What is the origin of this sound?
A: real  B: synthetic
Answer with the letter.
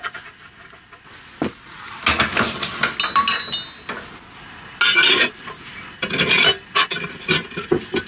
A